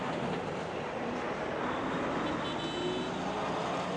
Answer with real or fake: real